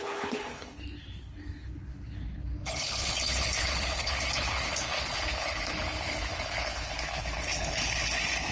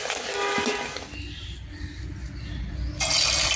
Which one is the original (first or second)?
second